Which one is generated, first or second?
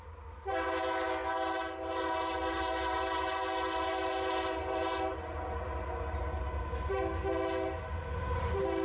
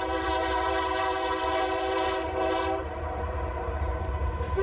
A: second